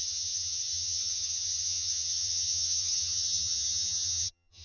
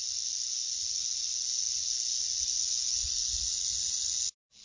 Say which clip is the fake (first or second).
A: first